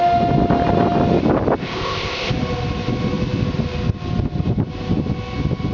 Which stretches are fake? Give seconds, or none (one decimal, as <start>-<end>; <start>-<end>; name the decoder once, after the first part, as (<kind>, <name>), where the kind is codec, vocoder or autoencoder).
1.6-2.3 (codec, ZipCodec)